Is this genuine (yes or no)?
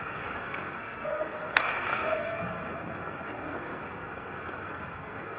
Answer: no